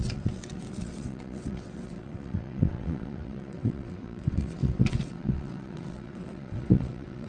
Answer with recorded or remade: remade